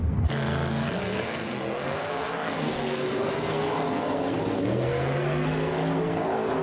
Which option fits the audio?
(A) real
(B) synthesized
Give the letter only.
B